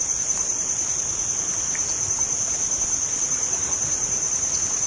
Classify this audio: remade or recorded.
recorded